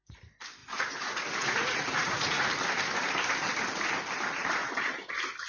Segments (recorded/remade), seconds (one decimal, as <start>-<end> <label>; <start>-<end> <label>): 0.0-0.6 recorded; 0.6-2.5 remade; 2.5-5.5 recorded

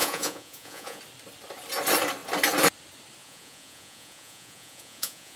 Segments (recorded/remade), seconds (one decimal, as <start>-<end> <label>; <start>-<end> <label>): 0.0-1.0 remade; 1.0-3.2 recorded; 3.2-5.4 remade

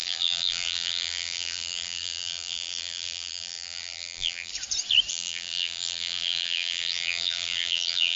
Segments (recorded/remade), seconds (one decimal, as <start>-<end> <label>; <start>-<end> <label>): 0.0-4.5 remade; 4.5-5.1 recorded; 5.1-8.2 remade

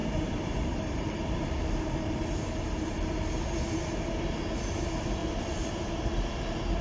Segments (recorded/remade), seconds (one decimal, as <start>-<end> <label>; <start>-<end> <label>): 0.0-3.3 remade; 3.3-5.2 recorded; 5.2-5.7 remade; 5.7-6.8 recorded

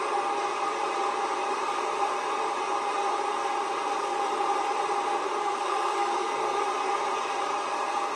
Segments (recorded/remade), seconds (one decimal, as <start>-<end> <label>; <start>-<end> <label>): 0.0-5.4 recorded; 5.4-6.6 remade; 6.6-8.2 recorded

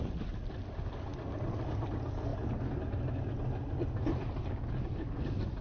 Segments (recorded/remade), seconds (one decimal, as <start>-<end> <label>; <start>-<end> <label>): 0.0-5.6 recorded

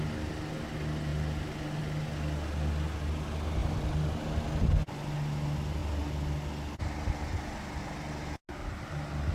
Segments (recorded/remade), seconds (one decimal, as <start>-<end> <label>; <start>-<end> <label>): 0.0-9.3 recorded

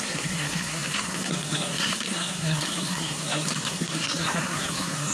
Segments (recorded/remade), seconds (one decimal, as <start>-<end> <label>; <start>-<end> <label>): 0.0-5.1 remade